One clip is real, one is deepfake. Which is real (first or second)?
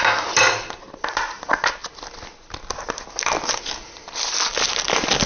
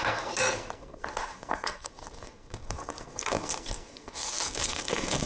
first